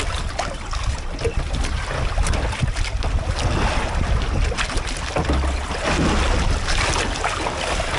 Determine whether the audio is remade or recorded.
recorded